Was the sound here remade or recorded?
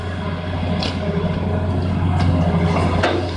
recorded